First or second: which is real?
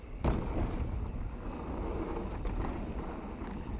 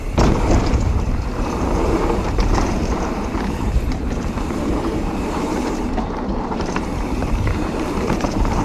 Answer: first